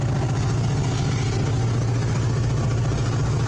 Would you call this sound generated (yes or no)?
no